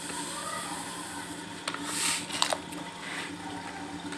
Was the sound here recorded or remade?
recorded